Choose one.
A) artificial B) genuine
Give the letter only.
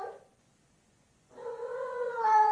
A